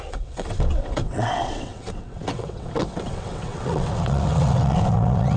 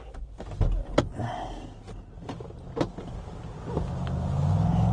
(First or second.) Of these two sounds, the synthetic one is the first